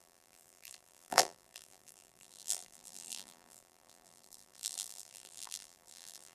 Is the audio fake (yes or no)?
yes